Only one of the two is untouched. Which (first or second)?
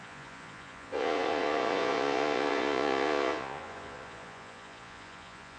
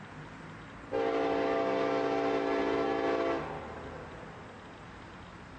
second